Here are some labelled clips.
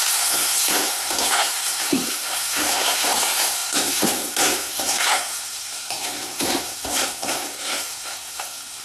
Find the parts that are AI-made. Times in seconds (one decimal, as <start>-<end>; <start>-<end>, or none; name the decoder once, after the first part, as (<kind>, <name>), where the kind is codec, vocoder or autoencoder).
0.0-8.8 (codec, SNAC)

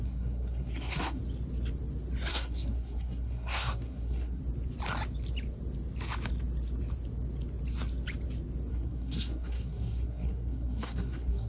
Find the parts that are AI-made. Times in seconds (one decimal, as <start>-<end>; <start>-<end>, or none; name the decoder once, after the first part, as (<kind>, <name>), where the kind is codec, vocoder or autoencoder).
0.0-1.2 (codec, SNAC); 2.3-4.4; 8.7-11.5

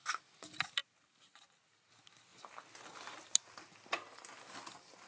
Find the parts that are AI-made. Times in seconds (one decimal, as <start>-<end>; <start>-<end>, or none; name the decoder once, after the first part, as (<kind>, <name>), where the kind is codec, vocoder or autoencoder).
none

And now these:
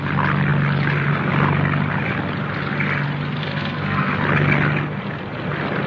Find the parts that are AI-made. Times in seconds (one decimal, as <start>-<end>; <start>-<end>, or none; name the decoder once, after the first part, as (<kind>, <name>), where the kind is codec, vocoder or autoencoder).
3.4-4.1 (codec, SNAC)